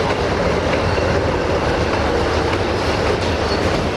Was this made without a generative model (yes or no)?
yes